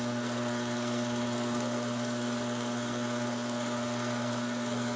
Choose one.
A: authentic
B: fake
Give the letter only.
B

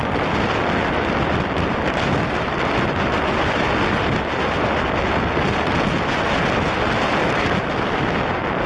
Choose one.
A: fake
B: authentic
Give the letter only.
B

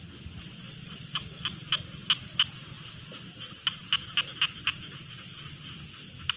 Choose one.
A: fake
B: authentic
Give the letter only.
B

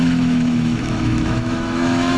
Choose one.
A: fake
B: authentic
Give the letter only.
A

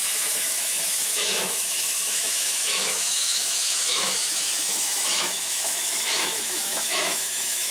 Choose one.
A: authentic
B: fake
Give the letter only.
B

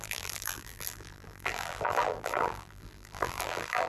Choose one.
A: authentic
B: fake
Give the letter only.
B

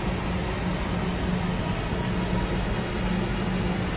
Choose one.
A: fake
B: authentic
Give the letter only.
B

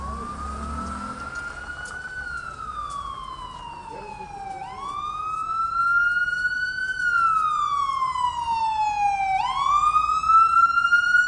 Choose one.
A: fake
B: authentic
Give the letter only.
B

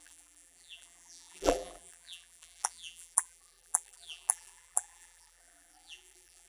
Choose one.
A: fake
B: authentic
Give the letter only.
A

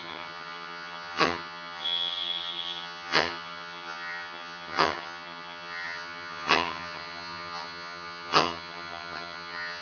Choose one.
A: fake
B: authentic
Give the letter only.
A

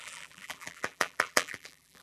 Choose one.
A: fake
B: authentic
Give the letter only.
A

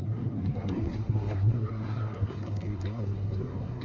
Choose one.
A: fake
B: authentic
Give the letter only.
A